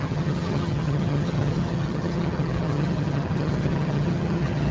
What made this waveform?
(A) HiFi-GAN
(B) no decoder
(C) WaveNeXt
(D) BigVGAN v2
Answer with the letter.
A